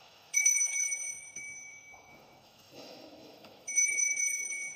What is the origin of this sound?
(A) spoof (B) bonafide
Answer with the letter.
A